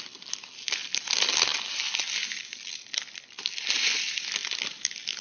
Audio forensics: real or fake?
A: real